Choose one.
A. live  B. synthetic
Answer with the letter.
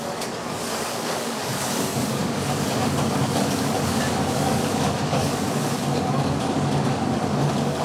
B